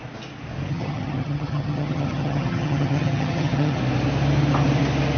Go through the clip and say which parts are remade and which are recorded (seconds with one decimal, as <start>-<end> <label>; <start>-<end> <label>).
0.0-0.7 recorded; 0.7-3.8 remade; 3.8-5.2 recorded